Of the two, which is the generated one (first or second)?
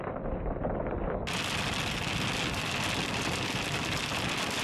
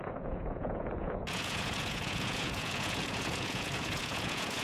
second